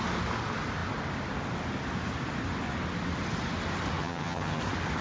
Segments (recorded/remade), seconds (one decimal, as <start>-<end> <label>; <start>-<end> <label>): 0.0-4.0 recorded; 4.0-4.6 remade; 4.6-5.0 recorded